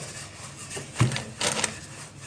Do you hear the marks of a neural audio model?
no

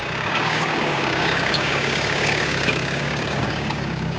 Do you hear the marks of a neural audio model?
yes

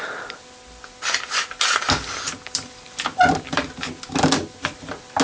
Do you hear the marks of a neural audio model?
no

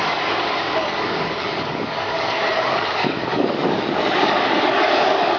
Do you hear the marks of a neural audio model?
yes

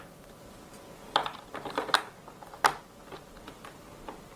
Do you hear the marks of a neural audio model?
no